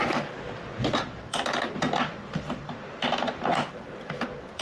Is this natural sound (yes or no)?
yes